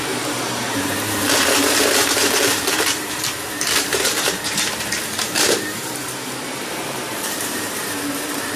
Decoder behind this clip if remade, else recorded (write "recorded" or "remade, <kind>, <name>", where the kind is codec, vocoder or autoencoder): remade, vocoder, BigVGAN v2